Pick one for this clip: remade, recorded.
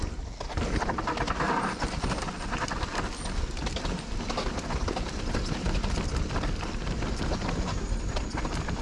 recorded